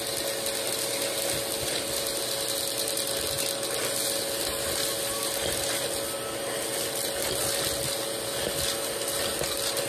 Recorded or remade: recorded